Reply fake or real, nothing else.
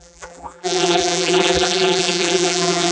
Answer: fake